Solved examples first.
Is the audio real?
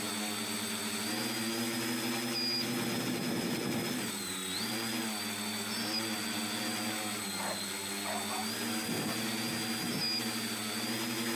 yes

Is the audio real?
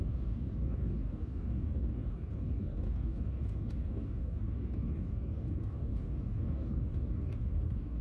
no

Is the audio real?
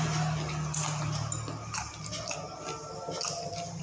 yes